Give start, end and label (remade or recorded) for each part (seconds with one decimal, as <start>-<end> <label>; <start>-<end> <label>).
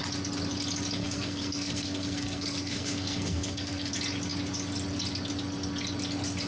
0.0-1.0 recorded; 1.0-3.9 remade; 3.9-6.5 recorded